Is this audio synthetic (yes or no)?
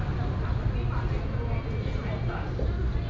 no